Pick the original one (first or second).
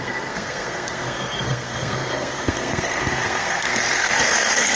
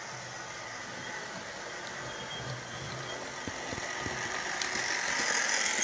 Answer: second